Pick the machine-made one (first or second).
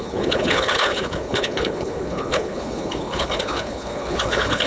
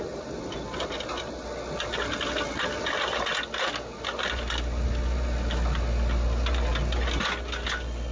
first